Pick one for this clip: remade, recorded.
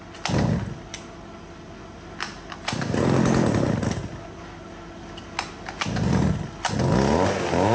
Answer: recorded